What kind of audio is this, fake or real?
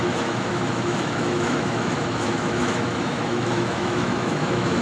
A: fake